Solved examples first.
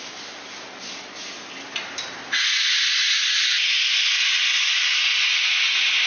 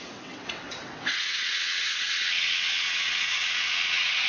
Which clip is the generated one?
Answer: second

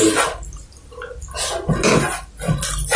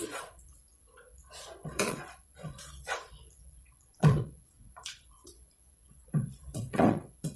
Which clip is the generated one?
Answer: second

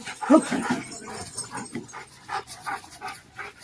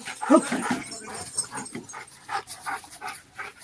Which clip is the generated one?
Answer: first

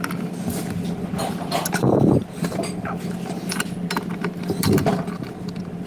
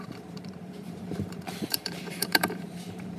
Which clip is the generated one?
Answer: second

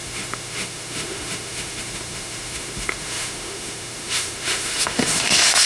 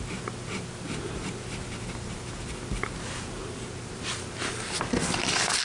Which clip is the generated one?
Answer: first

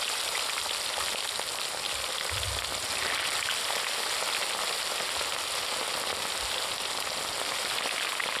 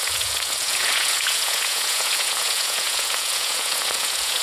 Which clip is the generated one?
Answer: second